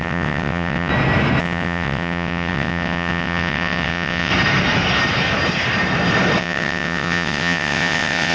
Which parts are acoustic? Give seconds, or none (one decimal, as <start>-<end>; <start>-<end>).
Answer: 0.9-1.4; 4.3-6.4